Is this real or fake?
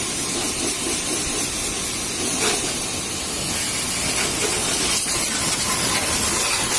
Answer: real